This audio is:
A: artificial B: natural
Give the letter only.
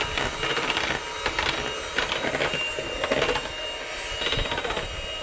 B